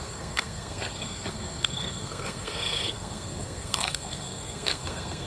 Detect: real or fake fake